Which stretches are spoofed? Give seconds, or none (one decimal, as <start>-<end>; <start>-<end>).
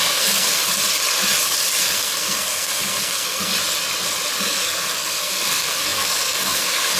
0.0-0.6; 1.8-3.5; 4.4-7.0